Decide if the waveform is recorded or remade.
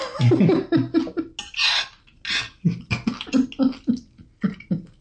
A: recorded